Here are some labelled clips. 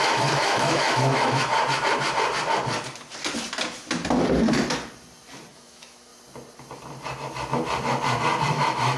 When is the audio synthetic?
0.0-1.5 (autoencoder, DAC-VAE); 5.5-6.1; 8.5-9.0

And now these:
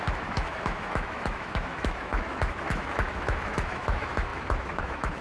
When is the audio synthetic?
0.0-5.2 (autoencoder, DAC-VAE)

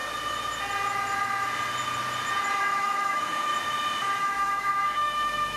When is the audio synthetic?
2.6-3.5 (autoencoder, DAC-VAE); 4.2-5.6

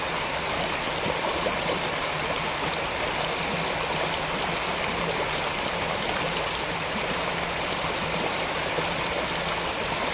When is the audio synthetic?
none

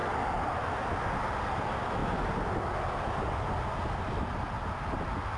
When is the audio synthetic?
none

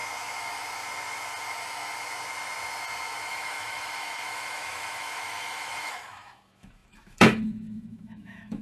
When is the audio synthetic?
3.3-8.6 (autoencoder, DAC-VAE)

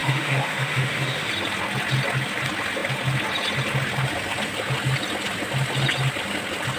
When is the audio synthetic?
0.0-1.3 (autoencoder, DAC-VAE)

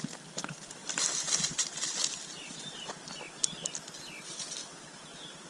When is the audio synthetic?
none